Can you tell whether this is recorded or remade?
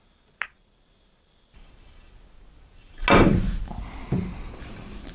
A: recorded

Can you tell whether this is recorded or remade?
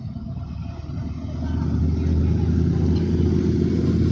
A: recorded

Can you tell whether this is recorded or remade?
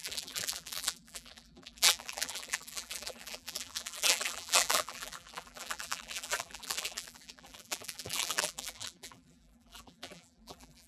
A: remade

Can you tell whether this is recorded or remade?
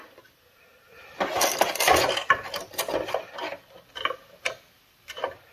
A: recorded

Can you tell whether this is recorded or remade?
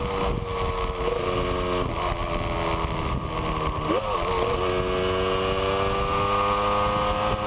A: recorded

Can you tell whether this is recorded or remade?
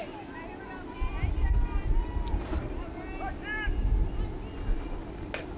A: recorded